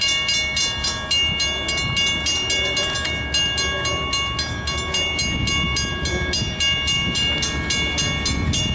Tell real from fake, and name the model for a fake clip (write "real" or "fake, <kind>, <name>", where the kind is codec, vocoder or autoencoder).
real